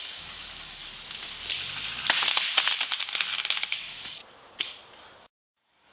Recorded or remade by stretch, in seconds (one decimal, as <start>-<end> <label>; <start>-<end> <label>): 0.0-0.9 remade; 0.9-3.7 recorded; 3.7-4.2 remade; 4.2-5.2 recorded; 5.2-5.9 remade